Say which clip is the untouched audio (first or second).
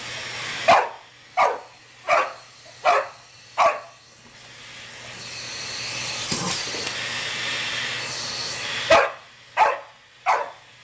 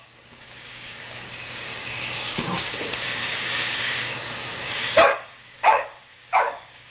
first